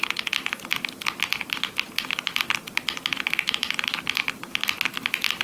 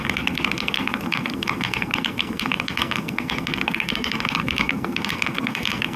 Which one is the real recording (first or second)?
first